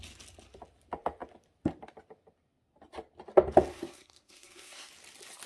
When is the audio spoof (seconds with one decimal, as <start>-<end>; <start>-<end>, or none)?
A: 3.7-4.9